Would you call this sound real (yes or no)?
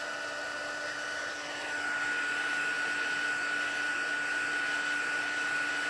yes